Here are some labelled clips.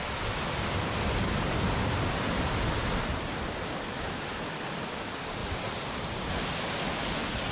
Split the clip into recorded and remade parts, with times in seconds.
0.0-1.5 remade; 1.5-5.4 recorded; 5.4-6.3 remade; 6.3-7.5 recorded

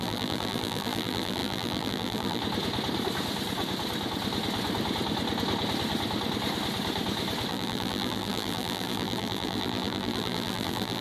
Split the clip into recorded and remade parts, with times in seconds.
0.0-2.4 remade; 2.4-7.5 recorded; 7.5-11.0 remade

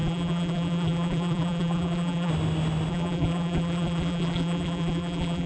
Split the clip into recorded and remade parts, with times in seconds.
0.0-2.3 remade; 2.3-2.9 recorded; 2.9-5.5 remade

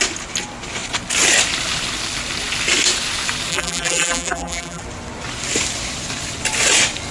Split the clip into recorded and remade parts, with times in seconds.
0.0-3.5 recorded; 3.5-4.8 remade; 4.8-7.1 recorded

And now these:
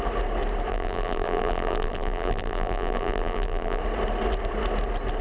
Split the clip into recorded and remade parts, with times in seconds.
0.0-0.7 recorded; 0.7-3.8 remade; 3.8-5.2 recorded